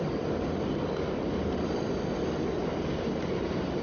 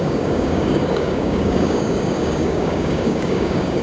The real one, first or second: first